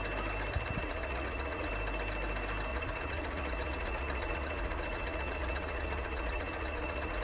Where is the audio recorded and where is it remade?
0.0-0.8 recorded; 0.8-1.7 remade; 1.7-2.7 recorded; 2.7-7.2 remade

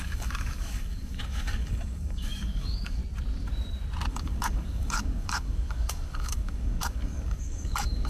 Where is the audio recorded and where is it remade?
0.0-3.0 remade; 3.0-4.1 recorded; 4.1-8.1 remade

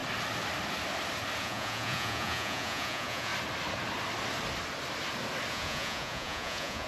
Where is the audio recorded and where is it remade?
0.0-1.4 recorded; 1.4-3.3 remade; 3.3-5.5 recorded; 5.5-6.9 remade

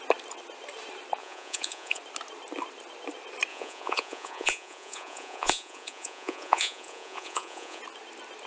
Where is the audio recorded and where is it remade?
0.0-1.2 recorded; 1.2-2.0 remade; 2.0-3.5 recorded; 3.5-7.8 remade; 7.8-8.5 recorded

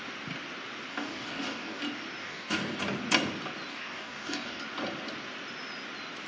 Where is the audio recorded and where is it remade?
0.0-0.9 recorded; 0.9-1.8 remade; 1.8-2.2 recorded; 2.2-2.8 remade; 2.8-3.7 recorded; 3.7-4.6 remade; 4.6-6.3 recorded